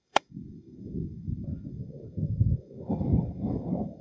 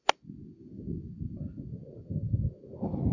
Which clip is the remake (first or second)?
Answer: first